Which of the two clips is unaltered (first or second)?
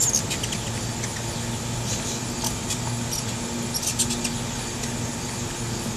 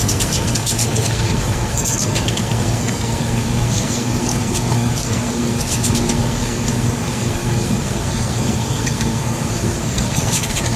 first